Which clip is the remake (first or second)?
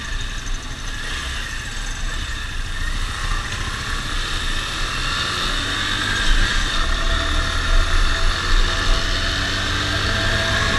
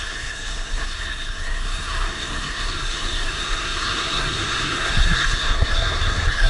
second